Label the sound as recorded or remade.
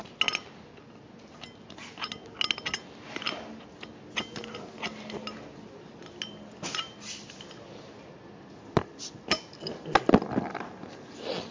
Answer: recorded